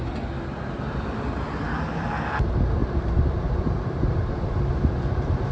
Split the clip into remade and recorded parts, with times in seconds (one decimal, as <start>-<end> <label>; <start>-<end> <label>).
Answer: 0.0-2.8 recorded; 2.8-5.5 remade